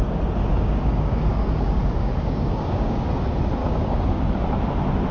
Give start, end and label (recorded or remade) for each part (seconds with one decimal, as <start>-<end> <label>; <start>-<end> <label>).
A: 0.0-0.5 recorded; 0.5-3.1 remade; 3.1-3.6 recorded; 3.6-4.3 remade; 4.3-5.1 recorded